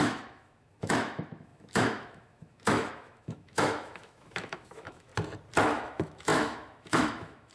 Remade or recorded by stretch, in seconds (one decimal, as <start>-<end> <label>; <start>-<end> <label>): 0.0-5.1 remade; 5.1-5.6 recorded; 5.6-7.5 remade